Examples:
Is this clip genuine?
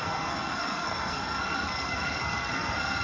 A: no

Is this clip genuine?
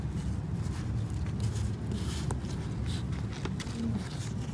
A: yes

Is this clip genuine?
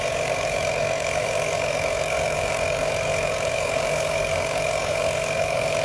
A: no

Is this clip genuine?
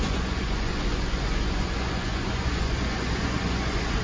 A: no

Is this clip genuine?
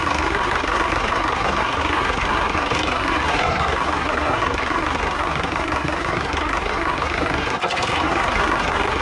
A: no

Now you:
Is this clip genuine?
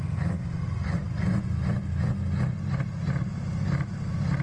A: yes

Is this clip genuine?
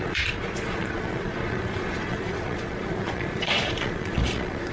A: no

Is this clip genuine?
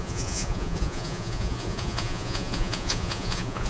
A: no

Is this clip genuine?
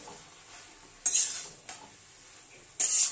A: yes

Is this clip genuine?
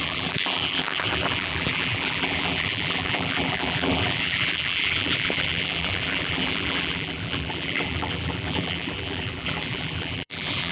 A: no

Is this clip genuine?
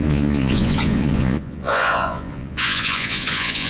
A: no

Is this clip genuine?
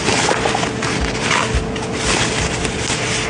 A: yes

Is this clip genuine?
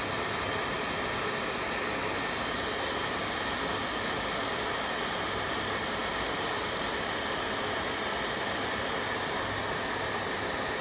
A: yes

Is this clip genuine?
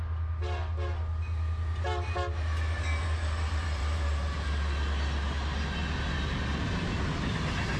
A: yes